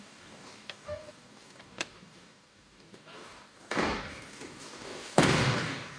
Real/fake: fake